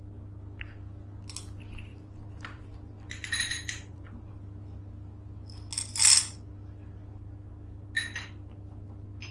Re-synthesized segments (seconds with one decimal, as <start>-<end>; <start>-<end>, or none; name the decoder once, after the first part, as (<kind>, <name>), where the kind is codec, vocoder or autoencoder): 1.9-4.4 (vocoder, BigVGAN v2)